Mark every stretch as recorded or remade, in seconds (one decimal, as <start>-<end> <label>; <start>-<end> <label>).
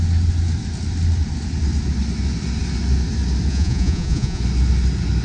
0.0-3.5 recorded; 3.5-4.4 remade; 4.4-5.2 recorded